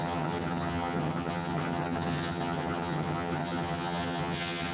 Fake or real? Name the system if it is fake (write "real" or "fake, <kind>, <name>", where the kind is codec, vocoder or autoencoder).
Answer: fake, vocoder, HiFi-GAN